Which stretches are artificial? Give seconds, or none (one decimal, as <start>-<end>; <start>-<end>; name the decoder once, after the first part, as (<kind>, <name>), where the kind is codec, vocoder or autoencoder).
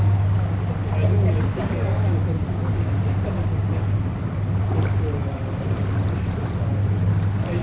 5.2-6.7 (vocoder, BigVGAN v2)